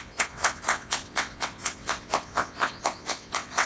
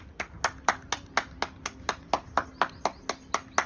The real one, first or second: second